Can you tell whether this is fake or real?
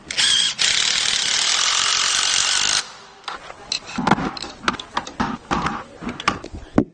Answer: real